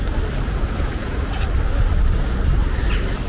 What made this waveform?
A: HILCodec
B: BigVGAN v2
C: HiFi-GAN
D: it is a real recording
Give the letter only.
D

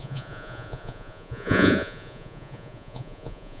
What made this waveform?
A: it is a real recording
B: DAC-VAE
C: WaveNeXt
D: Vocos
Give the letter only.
D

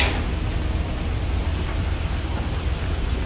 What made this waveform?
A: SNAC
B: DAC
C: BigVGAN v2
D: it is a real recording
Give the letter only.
D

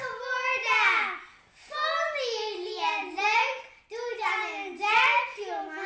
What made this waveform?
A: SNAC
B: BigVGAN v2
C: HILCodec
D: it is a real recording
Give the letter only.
D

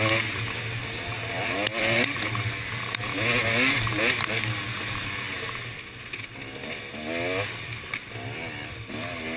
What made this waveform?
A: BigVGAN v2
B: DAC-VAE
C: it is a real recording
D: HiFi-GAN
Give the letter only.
C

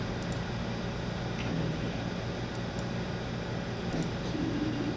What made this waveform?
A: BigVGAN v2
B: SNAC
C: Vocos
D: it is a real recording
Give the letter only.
D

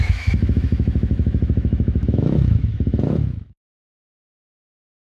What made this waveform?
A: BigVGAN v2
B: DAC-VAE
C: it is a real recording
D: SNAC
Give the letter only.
B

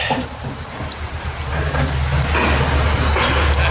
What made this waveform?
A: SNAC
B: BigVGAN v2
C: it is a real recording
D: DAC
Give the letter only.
C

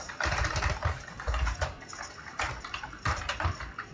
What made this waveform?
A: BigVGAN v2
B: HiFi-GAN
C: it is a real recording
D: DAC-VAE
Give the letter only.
A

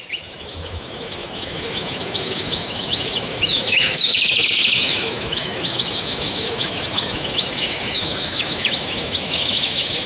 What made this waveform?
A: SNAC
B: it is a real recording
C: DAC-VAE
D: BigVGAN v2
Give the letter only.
C